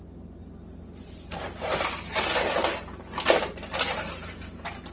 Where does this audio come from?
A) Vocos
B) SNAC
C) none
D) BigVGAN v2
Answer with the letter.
C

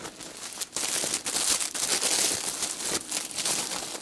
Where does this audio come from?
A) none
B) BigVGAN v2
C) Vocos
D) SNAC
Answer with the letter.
A